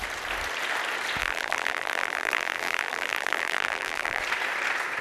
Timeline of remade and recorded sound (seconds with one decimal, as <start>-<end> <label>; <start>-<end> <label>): 0.0-1.2 recorded; 1.2-4.2 remade; 4.2-5.0 recorded